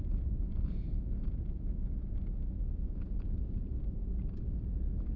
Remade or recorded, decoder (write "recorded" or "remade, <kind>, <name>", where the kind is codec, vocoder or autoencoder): remade, vocoder, Vocos